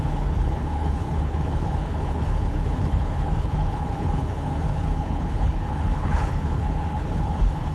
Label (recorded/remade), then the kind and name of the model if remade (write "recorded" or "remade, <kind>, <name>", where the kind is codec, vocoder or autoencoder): remade, codec, HILCodec